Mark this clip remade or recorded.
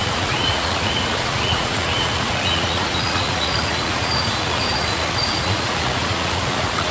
remade